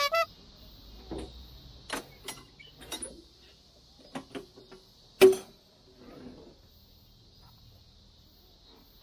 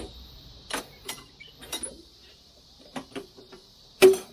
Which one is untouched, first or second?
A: first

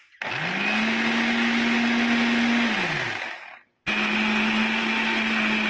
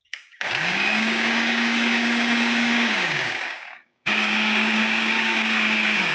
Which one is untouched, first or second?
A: first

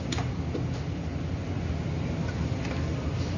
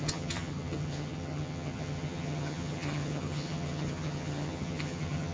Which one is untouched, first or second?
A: first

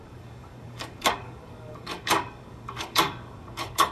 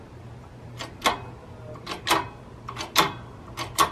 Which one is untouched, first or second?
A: second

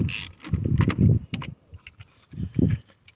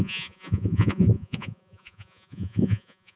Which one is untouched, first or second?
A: first